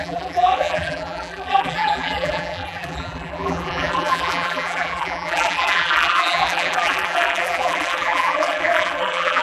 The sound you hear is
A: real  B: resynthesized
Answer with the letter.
B